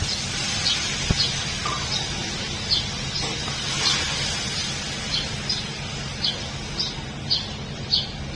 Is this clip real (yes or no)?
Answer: yes